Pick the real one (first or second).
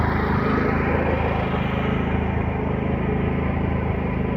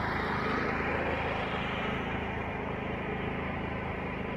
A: first